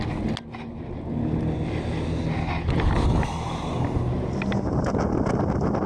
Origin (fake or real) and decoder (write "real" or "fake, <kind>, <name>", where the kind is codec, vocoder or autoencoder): real